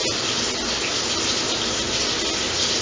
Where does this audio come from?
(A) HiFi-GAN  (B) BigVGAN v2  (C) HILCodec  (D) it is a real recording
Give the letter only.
D